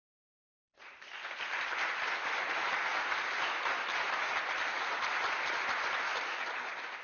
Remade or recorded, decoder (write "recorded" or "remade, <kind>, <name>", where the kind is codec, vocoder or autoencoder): recorded